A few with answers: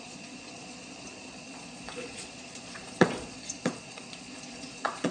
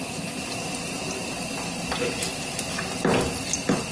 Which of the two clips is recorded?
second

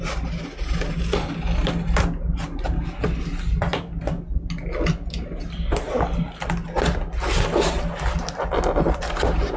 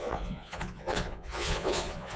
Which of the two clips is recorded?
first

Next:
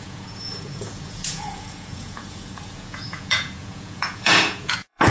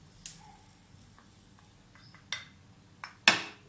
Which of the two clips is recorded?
second